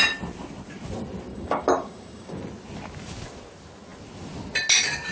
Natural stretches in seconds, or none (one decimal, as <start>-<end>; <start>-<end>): 0.0-1.3; 2.4-5.1